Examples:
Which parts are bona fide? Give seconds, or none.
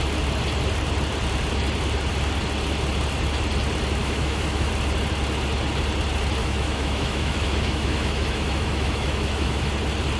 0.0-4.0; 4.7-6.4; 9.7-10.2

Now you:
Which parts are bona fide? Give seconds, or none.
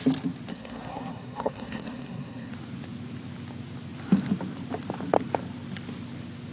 0.0-0.5; 2.5-6.5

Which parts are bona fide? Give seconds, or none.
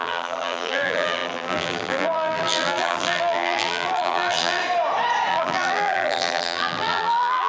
4.6-5.3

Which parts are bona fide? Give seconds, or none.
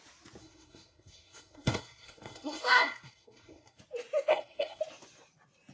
0.0-0.4; 3.8-4.3; 4.8-5.7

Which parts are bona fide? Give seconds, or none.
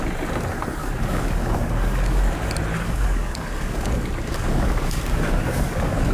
0.0-0.8; 2.3-2.7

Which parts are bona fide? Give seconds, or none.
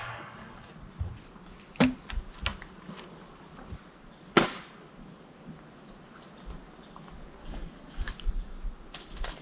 0.7-7.4; 8.1-9.4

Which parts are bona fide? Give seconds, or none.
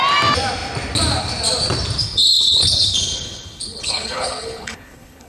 0.0-2.0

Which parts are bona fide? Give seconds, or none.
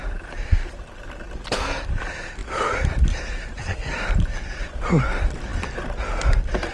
1.0-2.4; 5.0-6.7